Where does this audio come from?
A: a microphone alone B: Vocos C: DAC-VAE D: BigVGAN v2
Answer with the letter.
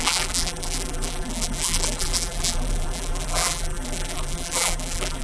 D